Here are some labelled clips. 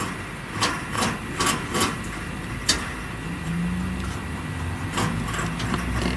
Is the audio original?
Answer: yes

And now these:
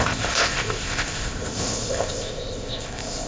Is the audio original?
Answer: no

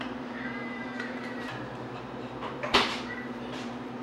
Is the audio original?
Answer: no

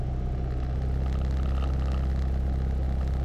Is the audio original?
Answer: yes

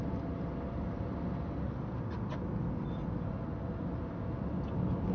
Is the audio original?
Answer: yes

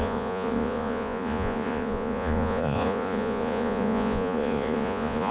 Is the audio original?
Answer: no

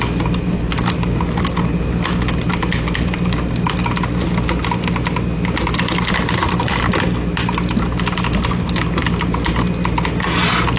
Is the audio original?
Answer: yes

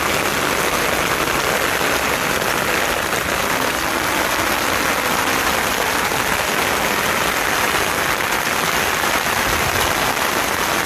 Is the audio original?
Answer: yes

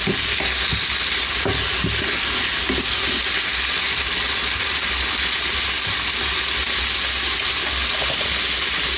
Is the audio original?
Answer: yes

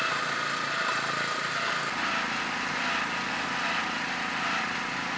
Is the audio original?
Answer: yes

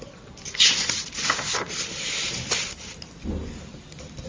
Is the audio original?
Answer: yes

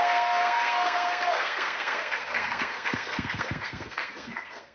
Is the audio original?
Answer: no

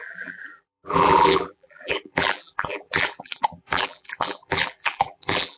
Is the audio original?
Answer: no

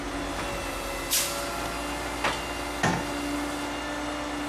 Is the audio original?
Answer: yes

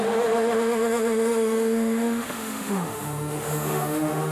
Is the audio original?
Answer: no